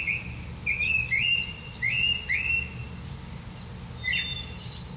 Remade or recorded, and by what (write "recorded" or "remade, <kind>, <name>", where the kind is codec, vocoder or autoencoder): recorded